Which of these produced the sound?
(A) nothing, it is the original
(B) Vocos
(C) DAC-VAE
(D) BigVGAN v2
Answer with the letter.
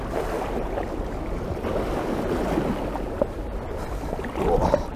A